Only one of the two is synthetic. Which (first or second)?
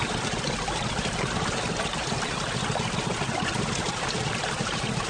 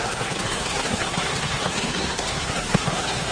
second